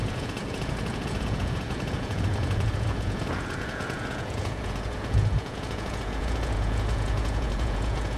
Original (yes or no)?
no